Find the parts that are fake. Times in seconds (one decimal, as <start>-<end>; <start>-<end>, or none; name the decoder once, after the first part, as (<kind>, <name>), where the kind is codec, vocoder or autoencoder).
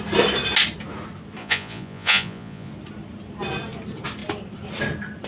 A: 1.4-2.7 (vocoder, Vocos)